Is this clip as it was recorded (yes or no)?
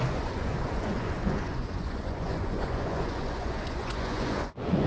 no